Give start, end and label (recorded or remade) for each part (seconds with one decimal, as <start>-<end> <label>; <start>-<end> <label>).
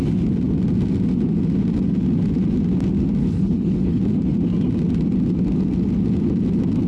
0.0-3.2 recorded; 3.2-4.0 remade; 4.0-6.9 recorded